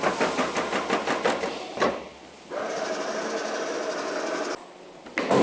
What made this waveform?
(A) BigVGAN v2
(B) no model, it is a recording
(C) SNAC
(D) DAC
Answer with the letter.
B